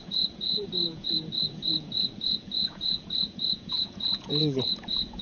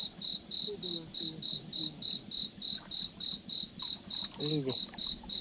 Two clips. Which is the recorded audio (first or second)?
second